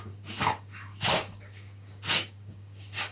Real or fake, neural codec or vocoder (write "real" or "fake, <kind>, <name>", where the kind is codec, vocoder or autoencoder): fake, codec, DAC